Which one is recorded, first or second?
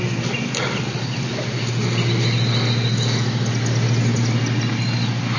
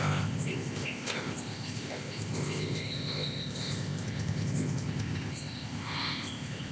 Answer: first